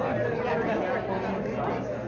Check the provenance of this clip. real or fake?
real